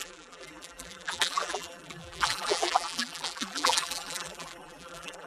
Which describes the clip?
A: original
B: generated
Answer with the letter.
B